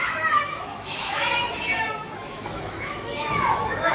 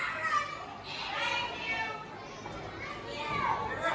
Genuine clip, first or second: second